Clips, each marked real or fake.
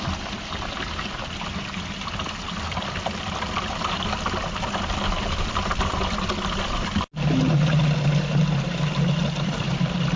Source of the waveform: real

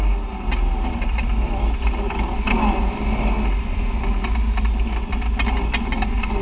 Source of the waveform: real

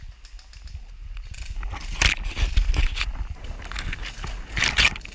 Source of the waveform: real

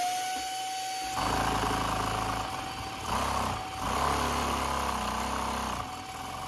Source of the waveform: real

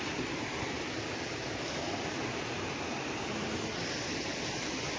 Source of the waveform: real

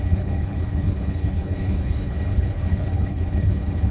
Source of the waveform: fake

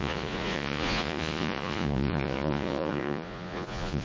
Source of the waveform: fake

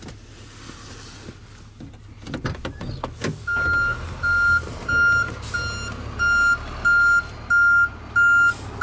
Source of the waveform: real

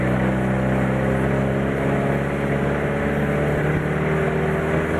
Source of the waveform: real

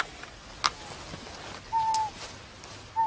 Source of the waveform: real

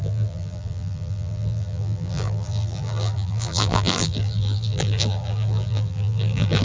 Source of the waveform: fake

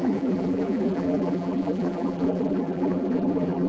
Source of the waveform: fake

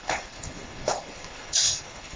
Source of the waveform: fake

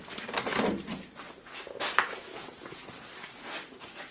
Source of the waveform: real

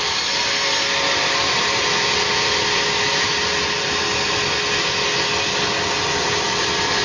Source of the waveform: real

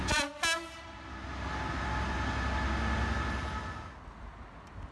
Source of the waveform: real